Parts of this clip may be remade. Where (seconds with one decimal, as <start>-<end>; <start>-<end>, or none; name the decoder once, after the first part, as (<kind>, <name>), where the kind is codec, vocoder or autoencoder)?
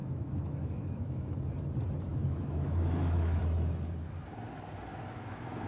0.0-1.4 (autoencoder, DAC-VAE); 2.1-3.4; 4.9-5.7